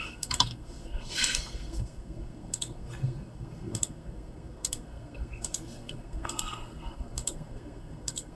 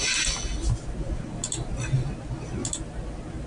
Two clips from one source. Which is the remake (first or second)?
first